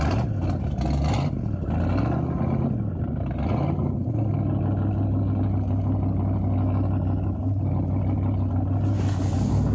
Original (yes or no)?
yes